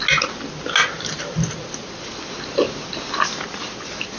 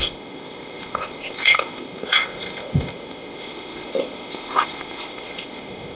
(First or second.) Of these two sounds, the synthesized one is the second